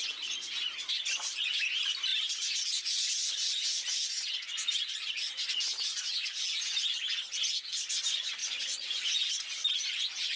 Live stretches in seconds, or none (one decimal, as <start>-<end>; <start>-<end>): 0.0-10.4